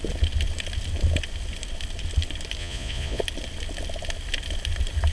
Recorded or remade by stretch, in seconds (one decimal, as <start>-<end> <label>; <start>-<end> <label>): 0.0-2.6 recorded; 2.6-3.2 remade; 3.2-5.1 recorded